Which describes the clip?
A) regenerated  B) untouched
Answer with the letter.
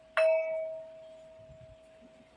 B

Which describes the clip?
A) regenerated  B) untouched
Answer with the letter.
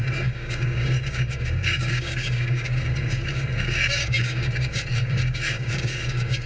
A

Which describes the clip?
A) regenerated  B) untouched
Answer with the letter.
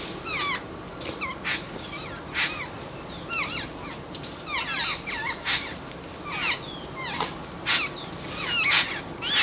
B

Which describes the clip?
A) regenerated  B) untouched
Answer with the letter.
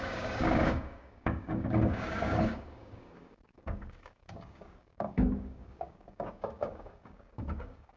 A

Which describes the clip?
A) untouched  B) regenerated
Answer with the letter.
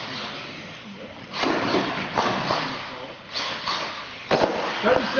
A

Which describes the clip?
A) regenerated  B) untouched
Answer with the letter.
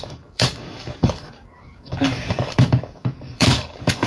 A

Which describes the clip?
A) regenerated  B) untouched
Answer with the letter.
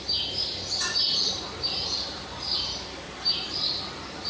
B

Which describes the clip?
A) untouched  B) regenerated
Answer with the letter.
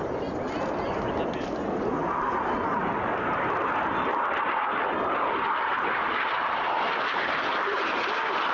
A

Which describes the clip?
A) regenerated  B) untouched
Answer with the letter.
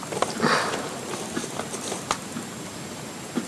B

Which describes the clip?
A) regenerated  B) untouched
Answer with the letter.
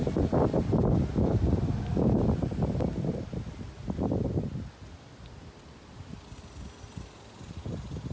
B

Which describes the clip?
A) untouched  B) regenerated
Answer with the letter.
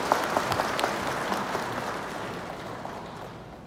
A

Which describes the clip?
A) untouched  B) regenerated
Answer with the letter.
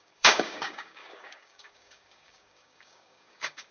B